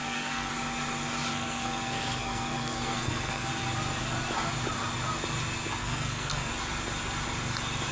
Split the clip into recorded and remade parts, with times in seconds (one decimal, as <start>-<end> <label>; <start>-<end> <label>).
0.0-0.5 remade; 0.5-1.3 recorded; 1.3-3.5 remade; 3.5-5.8 recorded; 5.8-6.5 remade; 6.5-7.9 recorded